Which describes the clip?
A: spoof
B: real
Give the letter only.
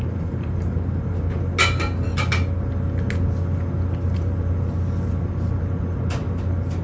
B